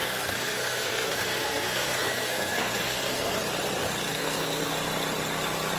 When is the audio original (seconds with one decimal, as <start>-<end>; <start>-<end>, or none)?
3.4-4.1; 4.7-5.8